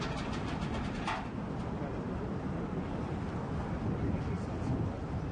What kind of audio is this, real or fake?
real